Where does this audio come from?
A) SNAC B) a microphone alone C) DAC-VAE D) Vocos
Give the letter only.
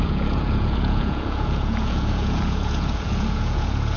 D